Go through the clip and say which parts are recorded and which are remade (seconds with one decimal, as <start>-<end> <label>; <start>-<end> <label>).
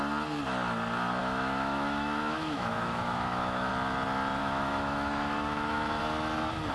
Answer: 0.0-1.2 recorded; 1.2-3.7 remade; 3.7-4.4 recorded; 4.4-6.0 remade; 6.0-6.7 recorded